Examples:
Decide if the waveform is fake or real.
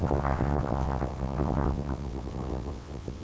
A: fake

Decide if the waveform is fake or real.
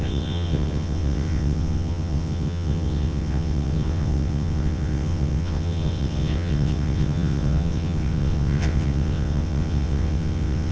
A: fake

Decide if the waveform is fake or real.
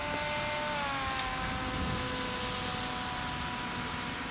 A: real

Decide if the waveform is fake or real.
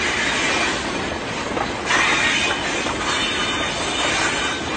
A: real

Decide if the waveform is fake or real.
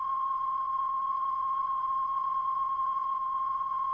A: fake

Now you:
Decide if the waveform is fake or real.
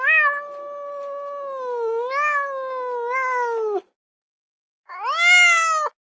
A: real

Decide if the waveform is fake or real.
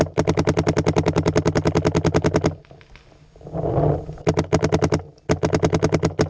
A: real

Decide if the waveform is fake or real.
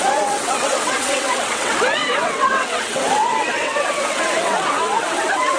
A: fake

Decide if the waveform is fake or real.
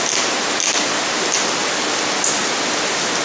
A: real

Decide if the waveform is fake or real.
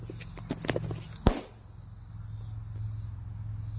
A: real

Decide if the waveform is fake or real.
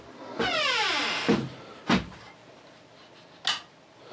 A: real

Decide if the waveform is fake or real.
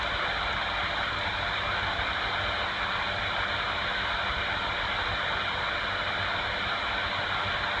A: real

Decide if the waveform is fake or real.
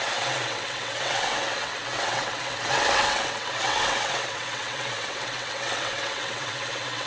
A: fake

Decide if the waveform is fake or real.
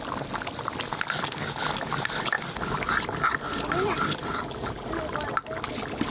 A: real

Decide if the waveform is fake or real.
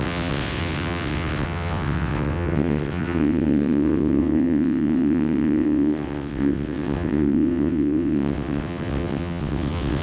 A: fake